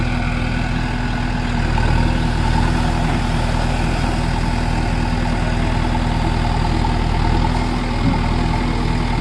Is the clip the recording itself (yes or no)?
yes